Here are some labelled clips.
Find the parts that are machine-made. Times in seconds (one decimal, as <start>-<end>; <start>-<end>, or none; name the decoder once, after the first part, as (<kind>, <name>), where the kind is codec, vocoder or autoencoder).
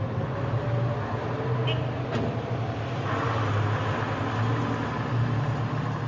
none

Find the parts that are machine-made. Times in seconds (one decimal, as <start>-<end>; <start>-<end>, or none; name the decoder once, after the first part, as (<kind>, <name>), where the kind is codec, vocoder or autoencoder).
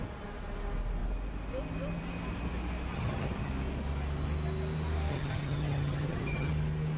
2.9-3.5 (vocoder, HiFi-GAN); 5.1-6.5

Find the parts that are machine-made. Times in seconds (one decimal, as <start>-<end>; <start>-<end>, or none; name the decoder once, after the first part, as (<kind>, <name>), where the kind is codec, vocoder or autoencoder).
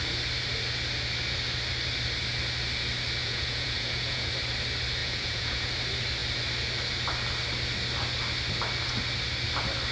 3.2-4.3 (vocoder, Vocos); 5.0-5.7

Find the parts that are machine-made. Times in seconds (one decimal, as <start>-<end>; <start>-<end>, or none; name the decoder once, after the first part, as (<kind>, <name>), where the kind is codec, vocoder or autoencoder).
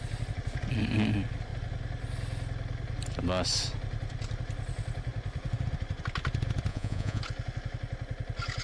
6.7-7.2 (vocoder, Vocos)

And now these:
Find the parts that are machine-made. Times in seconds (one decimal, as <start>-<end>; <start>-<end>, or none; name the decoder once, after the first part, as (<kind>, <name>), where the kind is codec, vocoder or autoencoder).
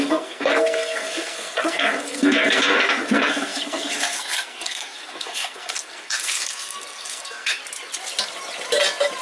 0.0-7.6 (codec, SNAC)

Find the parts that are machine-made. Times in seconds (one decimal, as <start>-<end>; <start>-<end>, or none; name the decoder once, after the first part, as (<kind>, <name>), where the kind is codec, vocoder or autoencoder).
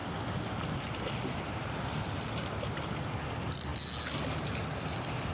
none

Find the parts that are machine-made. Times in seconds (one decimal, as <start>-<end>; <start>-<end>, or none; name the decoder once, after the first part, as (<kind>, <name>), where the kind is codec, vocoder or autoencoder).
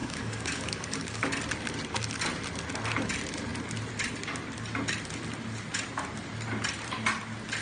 0.0-1.3 (codec, DAC)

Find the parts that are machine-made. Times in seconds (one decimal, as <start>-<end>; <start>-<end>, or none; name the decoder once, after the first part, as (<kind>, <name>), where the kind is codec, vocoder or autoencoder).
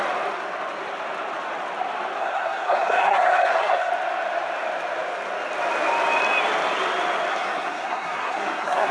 2.2-3.9 (codec, SNAC); 7.3-8.9